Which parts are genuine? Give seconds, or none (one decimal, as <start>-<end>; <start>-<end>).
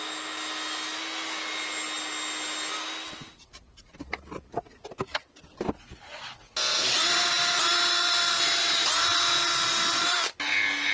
0.0-6.7; 8.3-10.9